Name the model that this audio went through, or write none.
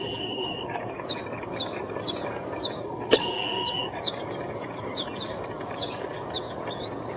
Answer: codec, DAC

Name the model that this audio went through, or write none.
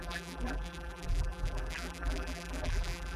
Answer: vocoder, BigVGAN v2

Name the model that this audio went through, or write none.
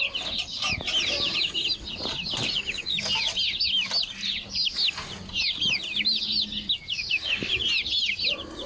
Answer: none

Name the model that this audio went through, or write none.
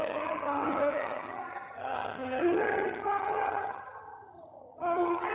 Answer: vocoder, HiFi-GAN